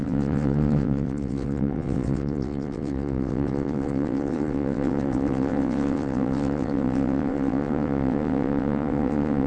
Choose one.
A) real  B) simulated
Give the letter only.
B